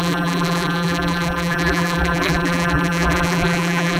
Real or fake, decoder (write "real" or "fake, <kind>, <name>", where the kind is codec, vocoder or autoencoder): fake, vocoder, BigVGAN v2